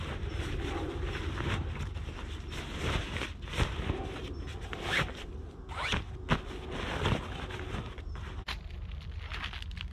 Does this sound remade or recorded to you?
recorded